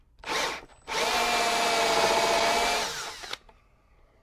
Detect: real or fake real